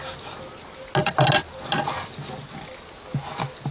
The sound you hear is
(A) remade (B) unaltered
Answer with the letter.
B